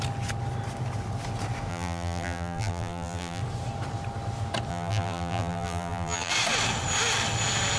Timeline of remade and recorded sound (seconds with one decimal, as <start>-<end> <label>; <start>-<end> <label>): 0.0-1.7 recorded; 1.7-3.4 remade; 3.4-4.7 recorded; 4.7-6.3 remade; 6.3-7.8 recorded